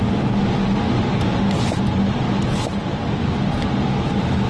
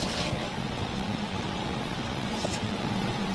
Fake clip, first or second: second